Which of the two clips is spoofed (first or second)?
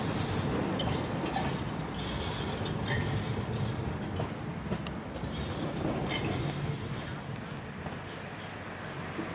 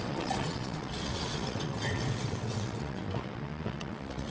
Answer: second